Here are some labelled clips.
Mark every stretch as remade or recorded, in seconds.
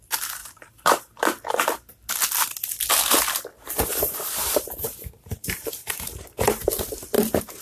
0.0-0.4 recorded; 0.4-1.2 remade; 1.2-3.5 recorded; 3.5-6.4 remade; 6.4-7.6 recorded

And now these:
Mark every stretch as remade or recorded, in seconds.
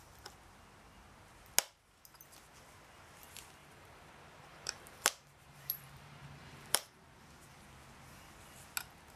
0.0-3.6 recorded; 3.6-4.1 remade; 4.1-4.5 recorded; 4.5-7.0 remade; 7.0-9.2 recorded